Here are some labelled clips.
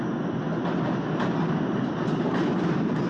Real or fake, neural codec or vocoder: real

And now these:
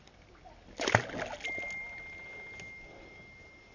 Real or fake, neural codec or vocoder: real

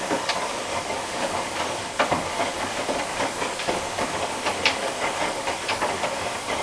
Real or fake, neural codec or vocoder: fake, codec, DAC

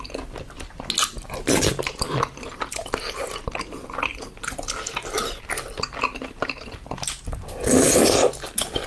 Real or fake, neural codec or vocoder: real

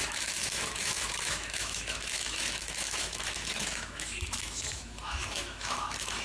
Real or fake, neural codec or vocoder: fake, autoencoder, DAC-VAE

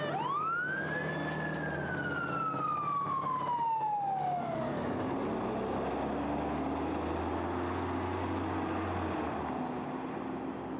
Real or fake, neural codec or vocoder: real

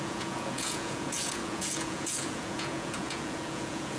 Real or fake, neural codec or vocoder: fake, vocoder, Vocos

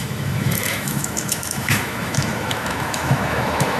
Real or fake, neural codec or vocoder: fake, autoencoder, DAC-VAE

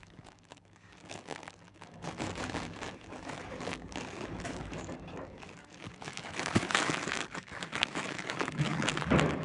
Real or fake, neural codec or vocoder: fake, codec, DAC